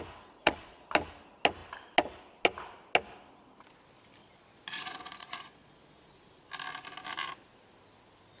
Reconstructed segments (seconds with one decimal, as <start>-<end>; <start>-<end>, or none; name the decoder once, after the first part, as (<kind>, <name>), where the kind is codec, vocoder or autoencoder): 0.4-0.9 (vocoder, Vocos); 4.2-6.2